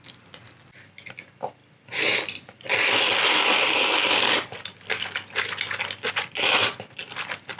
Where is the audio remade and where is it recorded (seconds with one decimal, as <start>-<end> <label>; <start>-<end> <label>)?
0.0-7.6 recorded